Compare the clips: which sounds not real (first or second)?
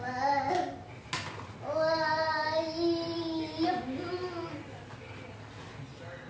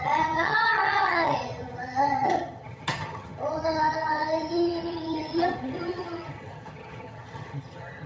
second